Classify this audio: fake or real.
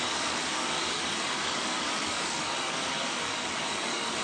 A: fake